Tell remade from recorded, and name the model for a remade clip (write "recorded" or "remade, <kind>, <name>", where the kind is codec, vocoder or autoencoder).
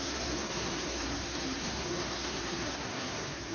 remade, codec, SNAC